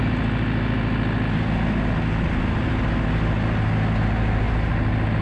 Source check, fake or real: real